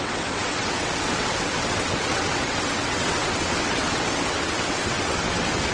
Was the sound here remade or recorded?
remade